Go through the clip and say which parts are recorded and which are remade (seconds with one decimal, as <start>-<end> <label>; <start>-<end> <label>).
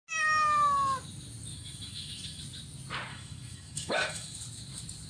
0.0-1.5 recorded; 1.5-2.4 remade; 2.4-3.1 recorded; 3.1-4.4 remade; 4.4-5.1 recorded